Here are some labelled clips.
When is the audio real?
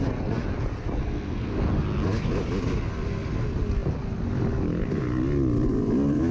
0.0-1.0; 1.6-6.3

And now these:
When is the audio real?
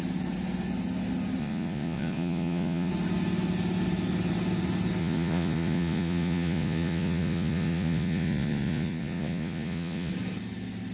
0.0-1.4; 2.9-5.0; 10.1-10.9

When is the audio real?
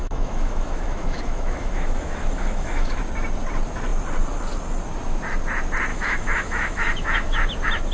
3.0-5.9; 7.4-7.9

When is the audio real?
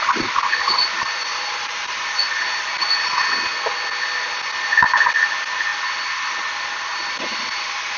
0.0-1.3; 2.0-8.0